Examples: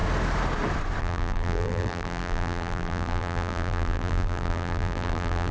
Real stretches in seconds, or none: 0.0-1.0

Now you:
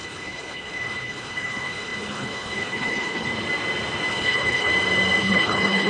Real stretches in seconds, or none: 3.3-4.1; 4.7-5.2

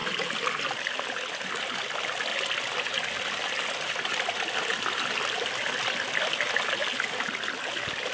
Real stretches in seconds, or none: 0.0-8.1

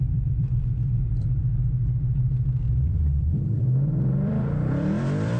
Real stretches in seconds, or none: 1.8-2.7

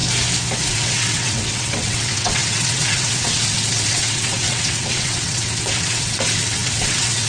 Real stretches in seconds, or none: 0.0-0.7

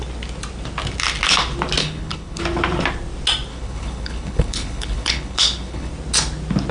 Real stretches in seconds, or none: 0.0-1.8; 2.4-3.5; 5.9-6.7

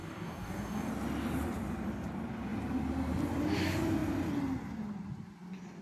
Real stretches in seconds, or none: 0.9-5.8

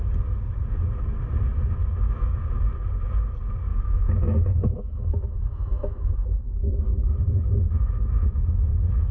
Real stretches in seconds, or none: 0.0-1.8; 2.6-3.7; 6.7-7.5